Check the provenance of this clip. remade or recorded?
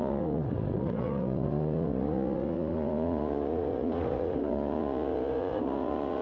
remade